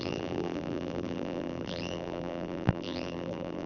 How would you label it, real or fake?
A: fake